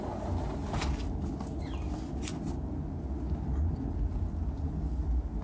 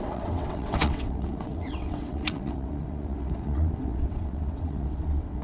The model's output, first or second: second